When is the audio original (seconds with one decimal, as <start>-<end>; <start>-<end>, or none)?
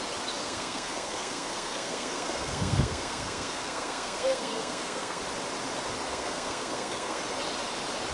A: 0.0-0.4; 5.2-6.1; 7.2-8.1